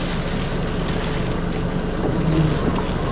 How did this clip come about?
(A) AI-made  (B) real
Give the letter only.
B